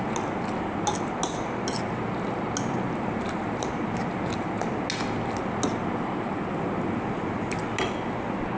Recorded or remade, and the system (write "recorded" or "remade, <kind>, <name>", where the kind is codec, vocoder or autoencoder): recorded